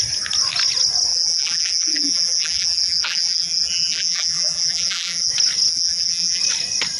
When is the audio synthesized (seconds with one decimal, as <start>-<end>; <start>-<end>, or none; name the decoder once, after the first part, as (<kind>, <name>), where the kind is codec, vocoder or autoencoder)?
1.1-5.3 (vocoder, BigVGAN v2); 5.7-6.4